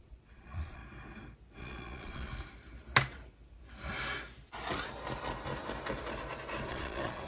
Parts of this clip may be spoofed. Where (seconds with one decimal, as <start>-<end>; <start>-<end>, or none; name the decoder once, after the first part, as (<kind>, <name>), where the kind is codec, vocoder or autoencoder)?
0.0-0.8 (vocoder, Vocos); 1.6-2.3; 6.7-7.3